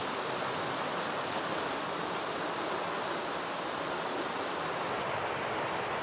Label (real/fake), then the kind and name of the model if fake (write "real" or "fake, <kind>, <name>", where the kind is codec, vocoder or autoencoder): real